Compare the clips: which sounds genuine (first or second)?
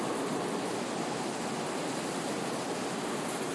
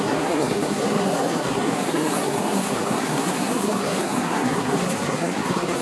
first